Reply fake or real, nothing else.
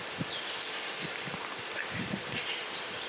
real